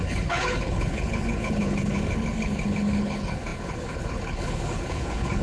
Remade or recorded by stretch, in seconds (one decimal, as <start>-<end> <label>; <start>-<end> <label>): 0.0-5.4 remade